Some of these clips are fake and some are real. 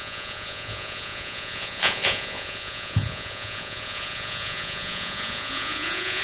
fake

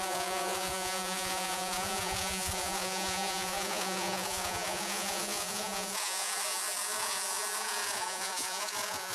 fake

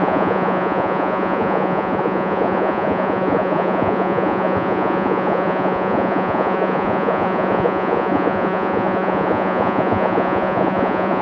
fake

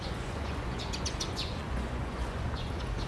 fake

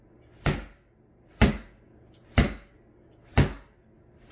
real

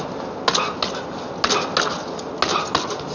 real